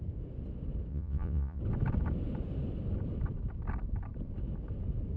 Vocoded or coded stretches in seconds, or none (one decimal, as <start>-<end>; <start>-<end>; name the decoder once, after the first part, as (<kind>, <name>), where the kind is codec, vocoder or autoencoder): 0.9-1.6 (vocoder, Vocos)